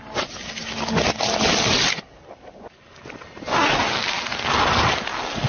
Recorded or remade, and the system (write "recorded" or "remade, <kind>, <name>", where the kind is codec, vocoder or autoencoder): recorded